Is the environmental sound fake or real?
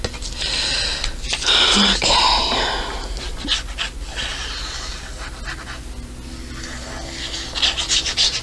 real